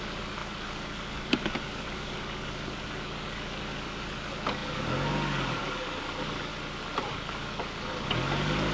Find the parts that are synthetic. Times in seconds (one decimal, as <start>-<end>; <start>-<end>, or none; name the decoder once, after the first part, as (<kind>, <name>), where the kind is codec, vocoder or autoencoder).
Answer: 0.0-6.5 (codec, DAC); 7.1-8.7

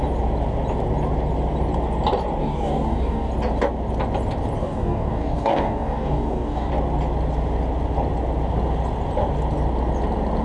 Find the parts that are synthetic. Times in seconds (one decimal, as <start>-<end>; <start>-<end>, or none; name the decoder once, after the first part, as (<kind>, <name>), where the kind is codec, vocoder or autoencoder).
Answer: 2.4-3.3 (codec, DAC); 4.6-6.7

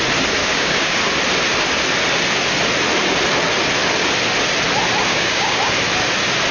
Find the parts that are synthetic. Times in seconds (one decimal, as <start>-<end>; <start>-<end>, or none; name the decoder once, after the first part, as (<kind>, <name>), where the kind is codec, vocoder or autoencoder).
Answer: 0.4-1.0 (codec, DAC); 5.1-5.7

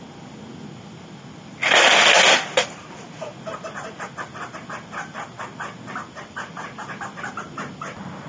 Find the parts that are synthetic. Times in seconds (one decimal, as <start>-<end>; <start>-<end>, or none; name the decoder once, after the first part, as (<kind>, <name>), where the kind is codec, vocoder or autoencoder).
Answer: none

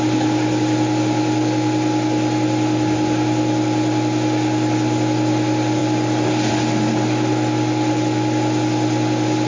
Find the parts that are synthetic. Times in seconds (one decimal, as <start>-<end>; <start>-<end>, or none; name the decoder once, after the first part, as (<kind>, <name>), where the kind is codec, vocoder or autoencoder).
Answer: none